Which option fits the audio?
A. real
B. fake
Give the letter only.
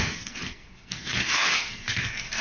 B